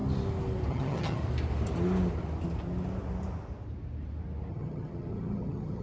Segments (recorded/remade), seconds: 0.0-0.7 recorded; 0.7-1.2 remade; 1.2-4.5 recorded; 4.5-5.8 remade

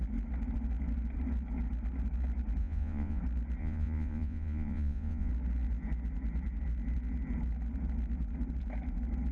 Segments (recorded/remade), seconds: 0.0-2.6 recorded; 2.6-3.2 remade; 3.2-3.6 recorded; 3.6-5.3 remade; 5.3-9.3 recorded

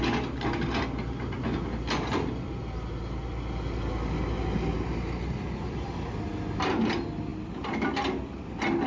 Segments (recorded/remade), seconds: 0.0-8.9 recorded

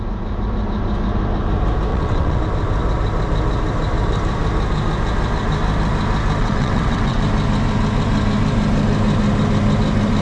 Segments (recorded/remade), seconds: 0.0-1.9 recorded; 1.9-2.4 remade; 2.4-6.4 recorded; 6.4-7.2 remade; 7.2-10.2 recorded

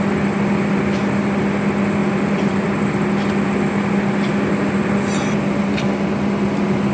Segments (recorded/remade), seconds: 0.0-2.0 recorded; 2.0-3.3 remade; 3.3-6.9 recorded

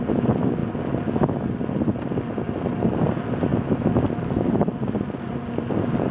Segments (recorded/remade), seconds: 0.0-6.1 recorded

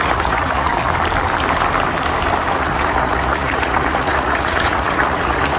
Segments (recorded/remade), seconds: 0.0-0.7 remade; 0.7-2.5 recorded; 2.5-5.6 remade

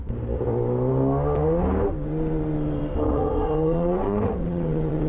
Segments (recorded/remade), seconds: 0.0-3.1 recorded; 3.1-5.1 remade